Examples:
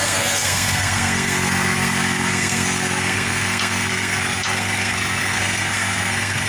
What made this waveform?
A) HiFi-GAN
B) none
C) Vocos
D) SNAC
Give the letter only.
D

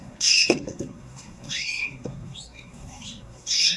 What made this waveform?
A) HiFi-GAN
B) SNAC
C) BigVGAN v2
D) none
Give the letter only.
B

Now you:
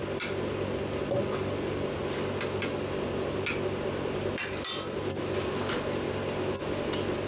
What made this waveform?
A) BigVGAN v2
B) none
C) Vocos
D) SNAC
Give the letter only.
B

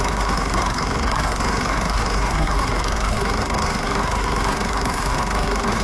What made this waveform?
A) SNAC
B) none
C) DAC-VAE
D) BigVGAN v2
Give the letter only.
A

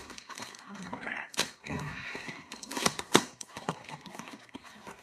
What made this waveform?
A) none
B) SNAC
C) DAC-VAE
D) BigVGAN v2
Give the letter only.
B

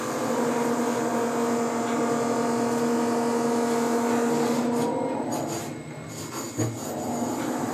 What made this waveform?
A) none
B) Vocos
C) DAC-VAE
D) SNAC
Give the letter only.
A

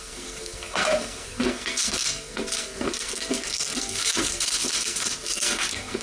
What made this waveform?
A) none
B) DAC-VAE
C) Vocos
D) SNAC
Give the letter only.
D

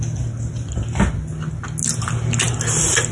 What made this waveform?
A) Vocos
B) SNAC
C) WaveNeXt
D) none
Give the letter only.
D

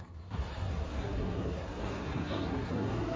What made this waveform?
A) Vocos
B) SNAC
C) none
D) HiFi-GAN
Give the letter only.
B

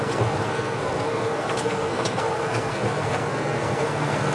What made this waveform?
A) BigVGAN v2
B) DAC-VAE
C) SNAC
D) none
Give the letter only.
C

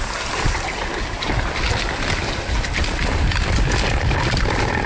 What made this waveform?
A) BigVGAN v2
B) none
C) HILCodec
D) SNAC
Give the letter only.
B